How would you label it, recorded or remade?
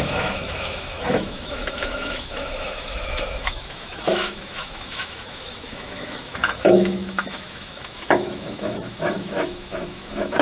remade